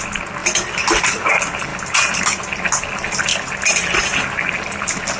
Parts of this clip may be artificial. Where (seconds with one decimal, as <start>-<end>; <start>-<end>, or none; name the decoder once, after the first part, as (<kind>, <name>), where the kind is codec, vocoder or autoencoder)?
none